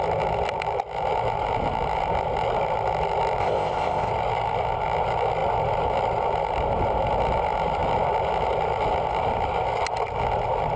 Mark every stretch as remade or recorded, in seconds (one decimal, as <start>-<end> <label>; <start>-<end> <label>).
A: 0.0-3.4 recorded; 3.4-4.1 remade; 4.1-10.8 recorded